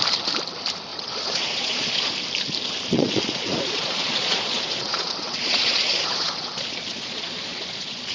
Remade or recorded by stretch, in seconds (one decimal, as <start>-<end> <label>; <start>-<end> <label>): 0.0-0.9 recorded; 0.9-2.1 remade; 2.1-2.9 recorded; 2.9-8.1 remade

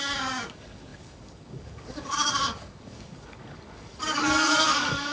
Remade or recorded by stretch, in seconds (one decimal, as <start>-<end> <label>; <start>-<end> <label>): 0.0-5.1 remade

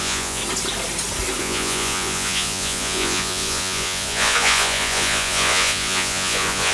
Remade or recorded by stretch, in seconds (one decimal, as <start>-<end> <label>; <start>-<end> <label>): 0.0-0.4 remade; 0.4-1.4 recorded; 1.4-6.7 remade